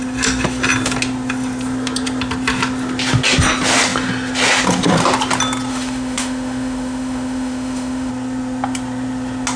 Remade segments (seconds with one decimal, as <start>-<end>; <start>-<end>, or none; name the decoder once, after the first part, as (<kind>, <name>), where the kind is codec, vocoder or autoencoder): 5.7-8.1 (autoencoder, DAC-VAE)